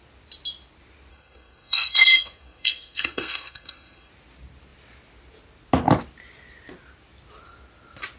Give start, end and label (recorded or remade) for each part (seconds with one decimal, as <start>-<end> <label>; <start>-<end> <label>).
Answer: 0.0-1.1 recorded; 1.1-4.1 remade; 4.1-8.2 recorded